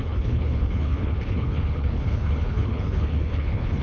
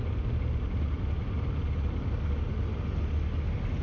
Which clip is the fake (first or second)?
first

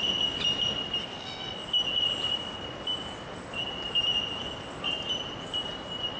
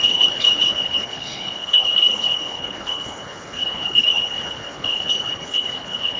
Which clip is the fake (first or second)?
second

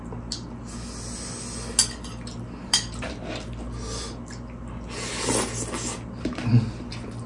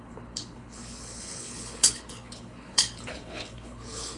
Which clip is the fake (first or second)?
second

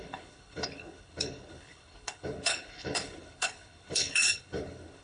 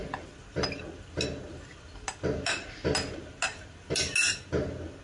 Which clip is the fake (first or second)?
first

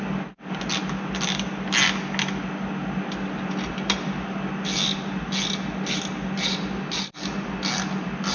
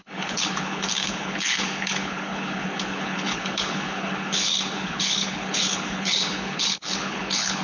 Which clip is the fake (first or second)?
second